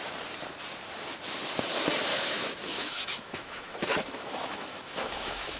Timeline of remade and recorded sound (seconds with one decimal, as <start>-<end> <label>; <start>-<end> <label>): 0.0-2.1 recorded; 2.1-5.6 remade